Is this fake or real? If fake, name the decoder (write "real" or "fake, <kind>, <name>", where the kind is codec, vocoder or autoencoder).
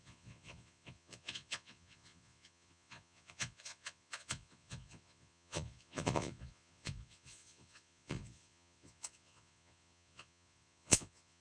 fake, vocoder, Vocos